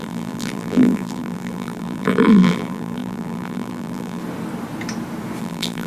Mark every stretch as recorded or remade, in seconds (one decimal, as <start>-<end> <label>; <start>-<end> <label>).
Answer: 0.0-4.2 remade; 4.2-5.4 recorded; 5.4-5.9 remade